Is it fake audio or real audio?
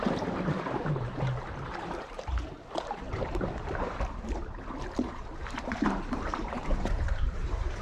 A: fake